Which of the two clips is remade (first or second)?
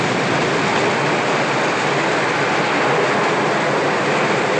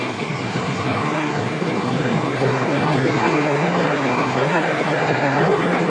second